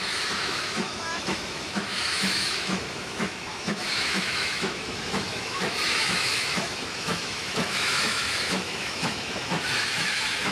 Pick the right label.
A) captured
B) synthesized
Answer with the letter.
B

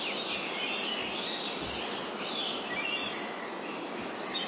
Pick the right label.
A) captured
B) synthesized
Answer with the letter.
A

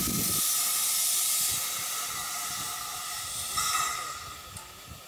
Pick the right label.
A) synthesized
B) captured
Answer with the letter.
B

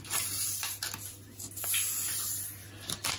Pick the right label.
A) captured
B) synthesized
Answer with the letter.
A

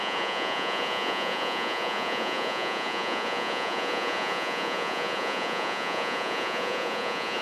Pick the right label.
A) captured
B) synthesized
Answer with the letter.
B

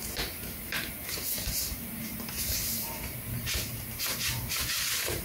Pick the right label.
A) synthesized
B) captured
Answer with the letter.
A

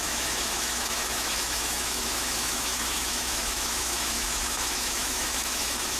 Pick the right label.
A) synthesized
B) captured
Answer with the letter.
A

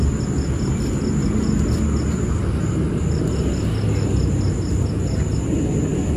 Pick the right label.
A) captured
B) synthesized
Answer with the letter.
A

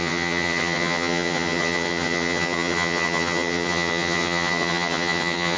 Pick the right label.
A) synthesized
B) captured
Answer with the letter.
A